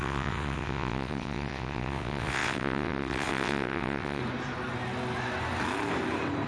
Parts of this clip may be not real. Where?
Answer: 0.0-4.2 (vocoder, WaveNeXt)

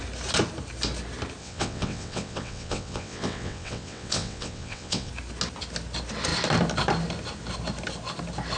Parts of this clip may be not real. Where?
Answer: 1.4-5.1 (vocoder, WaveNeXt)

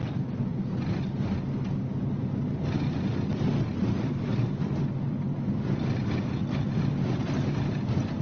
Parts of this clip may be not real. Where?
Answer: none

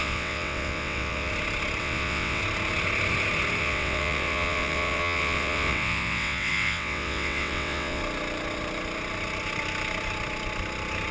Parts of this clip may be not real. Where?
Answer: 0.0-1.3 (vocoder, WaveNeXt); 1.8-2.4; 3.6-8.0

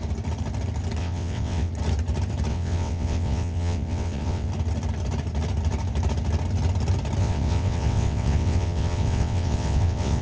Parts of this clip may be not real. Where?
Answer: 1.0-1.7 (vocoder, WaveNeXt); 2.5-4.5; 7.2-10.2